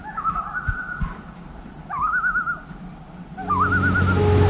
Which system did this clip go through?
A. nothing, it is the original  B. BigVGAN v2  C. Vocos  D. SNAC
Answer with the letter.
A